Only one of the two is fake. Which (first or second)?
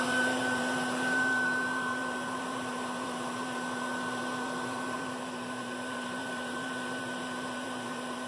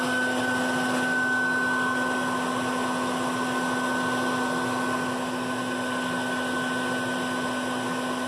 first